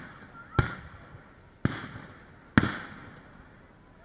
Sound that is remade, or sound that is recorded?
recorded